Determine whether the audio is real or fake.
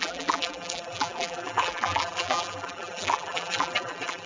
fake